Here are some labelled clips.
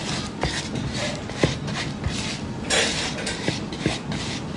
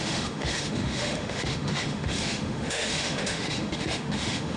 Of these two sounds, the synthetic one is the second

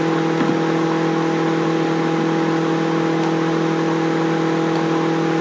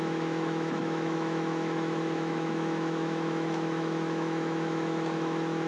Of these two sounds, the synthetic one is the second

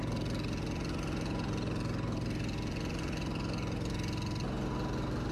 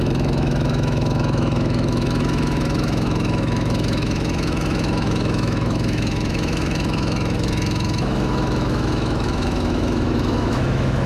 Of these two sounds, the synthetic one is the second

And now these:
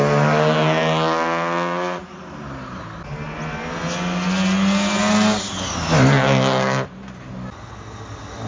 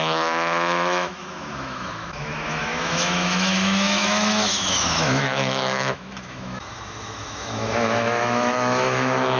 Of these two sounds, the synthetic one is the second